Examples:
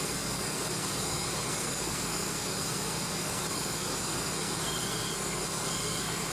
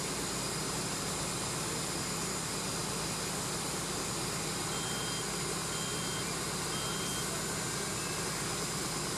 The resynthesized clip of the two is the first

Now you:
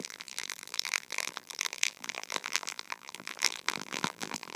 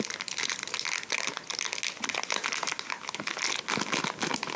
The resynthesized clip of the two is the first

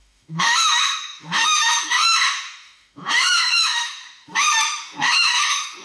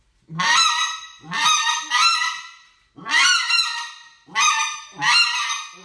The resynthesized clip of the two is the first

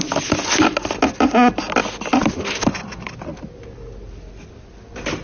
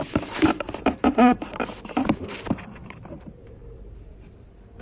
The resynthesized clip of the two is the second